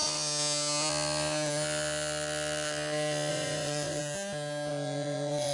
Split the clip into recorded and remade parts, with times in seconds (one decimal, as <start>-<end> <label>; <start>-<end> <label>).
0.0-3.3 recorded; 3.3-4.0 remade; 4.0-4.7 recorded; 4.7-5.5 remade